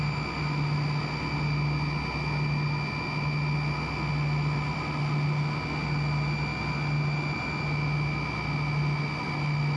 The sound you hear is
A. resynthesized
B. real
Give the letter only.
B